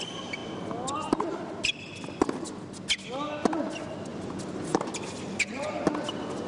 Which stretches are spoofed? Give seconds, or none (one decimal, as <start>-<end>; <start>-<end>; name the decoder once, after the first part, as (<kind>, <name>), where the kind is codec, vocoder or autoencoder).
none